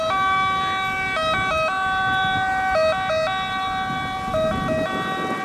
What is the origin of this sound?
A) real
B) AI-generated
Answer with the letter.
A